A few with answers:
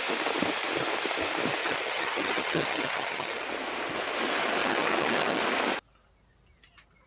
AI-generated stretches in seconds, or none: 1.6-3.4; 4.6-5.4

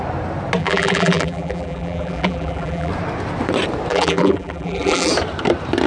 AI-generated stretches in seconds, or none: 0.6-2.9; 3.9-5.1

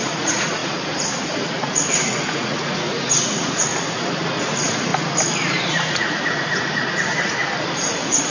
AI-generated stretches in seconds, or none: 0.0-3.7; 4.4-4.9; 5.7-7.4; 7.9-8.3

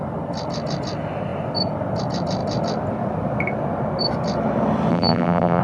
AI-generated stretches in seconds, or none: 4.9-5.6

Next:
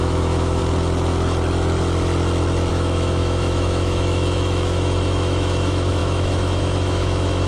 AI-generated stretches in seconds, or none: 0.0-0.6; 2.7-7.5

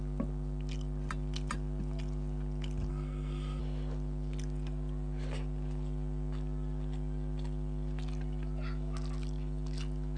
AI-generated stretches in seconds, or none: 2.9-3.6

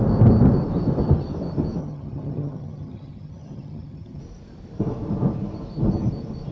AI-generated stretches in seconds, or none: 1.8-4.2

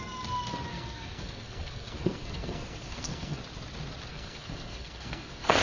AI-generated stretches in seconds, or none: 0.7-3.4; 4.1-5.6